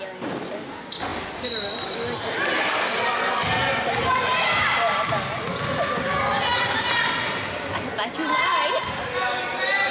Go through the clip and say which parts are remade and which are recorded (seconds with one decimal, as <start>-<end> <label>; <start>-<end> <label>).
0.0-6.5 recorded; 6.5-9.0 remade; 9.0-9.9 recorded